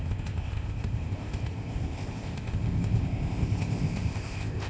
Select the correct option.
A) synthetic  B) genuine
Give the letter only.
A